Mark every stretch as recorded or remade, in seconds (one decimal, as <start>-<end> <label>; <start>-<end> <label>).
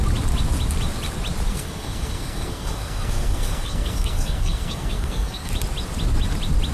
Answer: 0.0-1.5 recorded; 1.5-5.5 remade; 5.5-6.7 recorded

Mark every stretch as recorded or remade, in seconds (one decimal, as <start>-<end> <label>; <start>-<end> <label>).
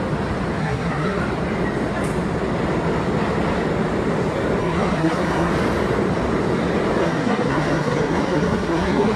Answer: 0.0-0.6 recorded; 0.6-1.2 remade; 1.2-4.6 recorded; 4.6-5.5 remade; 5.5-7.0 recorded; 7.0-9.2 remade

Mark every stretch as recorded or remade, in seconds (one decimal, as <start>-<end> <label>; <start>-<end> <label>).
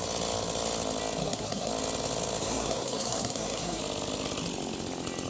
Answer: 0.0-1.2 recorded; 1.2-1.7 remade; 1.7-2.4 recorded; 2.4-3.8 remade; 3.8-5.3 recorded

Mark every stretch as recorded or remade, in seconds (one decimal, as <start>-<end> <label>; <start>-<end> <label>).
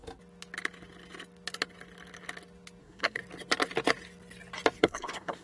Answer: 0.0-2.8 recorded; 2.8-3.2 remade; 3.2-4.8 recorded; 4.8-5.4 remade